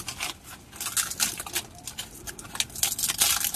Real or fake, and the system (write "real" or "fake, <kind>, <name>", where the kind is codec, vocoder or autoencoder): real